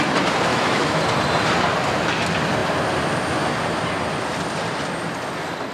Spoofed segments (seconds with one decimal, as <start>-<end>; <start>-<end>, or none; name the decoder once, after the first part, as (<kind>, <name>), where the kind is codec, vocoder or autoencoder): 0.5-1.0 (autoencoder, DAC-VAE)